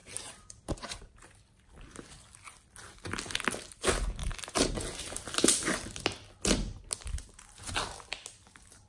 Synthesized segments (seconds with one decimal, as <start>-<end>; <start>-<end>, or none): 0.0-1.0; 4.2-4.8